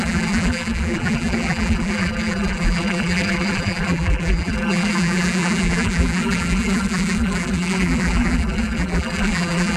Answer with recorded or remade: remade